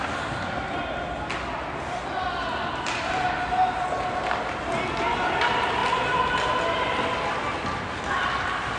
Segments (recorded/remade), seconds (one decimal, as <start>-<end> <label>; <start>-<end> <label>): 0.0-8.8 recorded